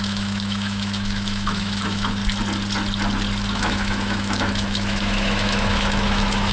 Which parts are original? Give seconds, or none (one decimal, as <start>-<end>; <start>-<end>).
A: 2.2-3.5